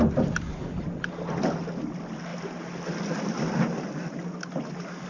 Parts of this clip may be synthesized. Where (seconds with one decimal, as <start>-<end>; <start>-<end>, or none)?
none